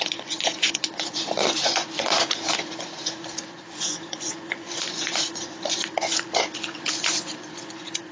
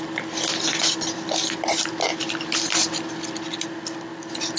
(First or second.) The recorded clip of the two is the second